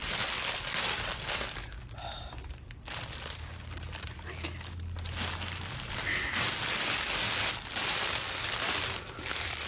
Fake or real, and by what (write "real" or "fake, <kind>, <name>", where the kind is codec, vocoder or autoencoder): real